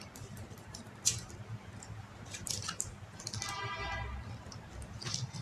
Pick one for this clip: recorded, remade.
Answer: recorded